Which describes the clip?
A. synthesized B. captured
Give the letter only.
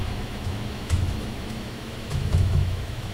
A